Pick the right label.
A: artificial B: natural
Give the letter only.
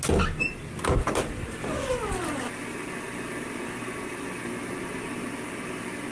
B